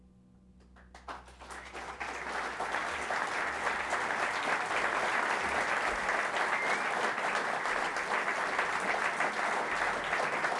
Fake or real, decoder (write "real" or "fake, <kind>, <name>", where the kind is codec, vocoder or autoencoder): real